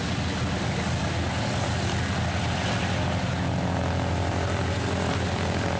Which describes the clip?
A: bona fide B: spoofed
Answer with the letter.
A